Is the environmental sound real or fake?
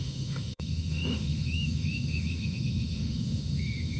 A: fake